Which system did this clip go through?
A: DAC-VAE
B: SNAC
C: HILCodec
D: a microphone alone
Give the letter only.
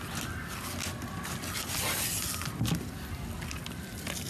D